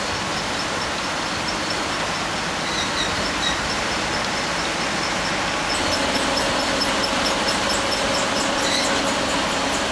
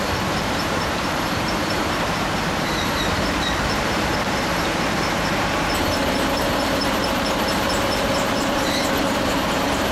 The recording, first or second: first